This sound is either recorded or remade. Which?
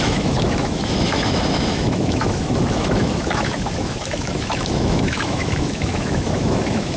remade